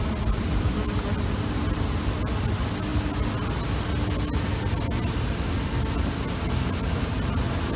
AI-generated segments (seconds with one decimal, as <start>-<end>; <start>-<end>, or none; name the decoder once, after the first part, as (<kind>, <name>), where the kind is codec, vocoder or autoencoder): none